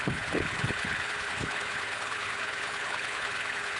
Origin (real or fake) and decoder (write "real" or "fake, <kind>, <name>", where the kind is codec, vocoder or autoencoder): fake, codec, HILCodec